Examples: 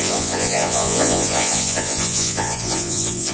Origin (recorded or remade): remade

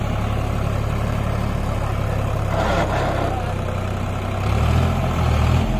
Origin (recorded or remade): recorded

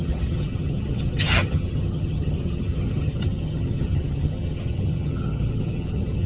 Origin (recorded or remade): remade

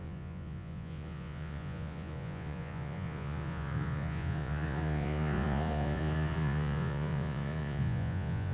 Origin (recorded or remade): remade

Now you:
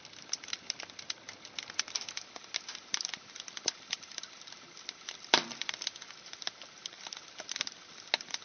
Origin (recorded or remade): recorded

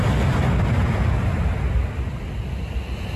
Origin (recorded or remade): recorded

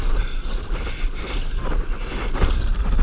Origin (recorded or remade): recorded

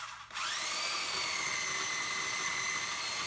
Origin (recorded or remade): recorded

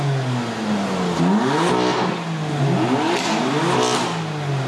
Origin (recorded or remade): recorded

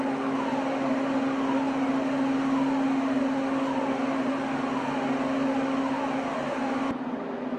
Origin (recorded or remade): recorded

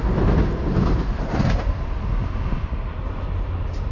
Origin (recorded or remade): recorded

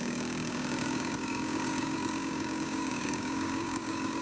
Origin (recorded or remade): remade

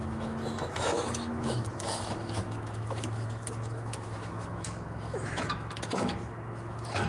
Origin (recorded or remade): remade